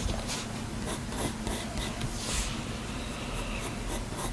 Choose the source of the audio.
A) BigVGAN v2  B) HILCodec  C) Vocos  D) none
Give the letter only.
D